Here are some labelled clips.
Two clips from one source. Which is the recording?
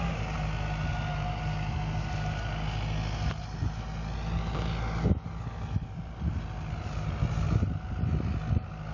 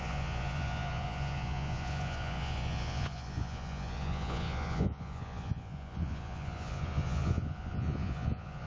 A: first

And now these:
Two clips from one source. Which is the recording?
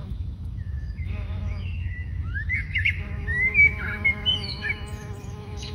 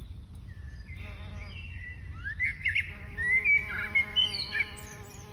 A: second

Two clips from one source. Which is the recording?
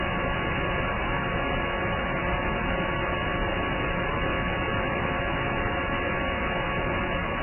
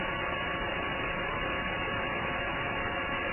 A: first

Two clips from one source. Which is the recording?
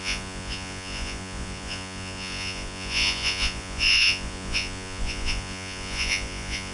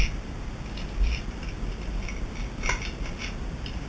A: second